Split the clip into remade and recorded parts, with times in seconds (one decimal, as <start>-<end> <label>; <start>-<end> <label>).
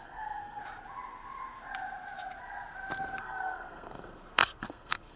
0.0-0.6 remade; 0.6-3.2 recorded; 3.2-5.2 remade